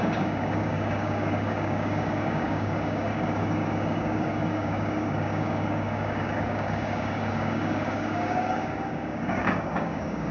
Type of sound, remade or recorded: remade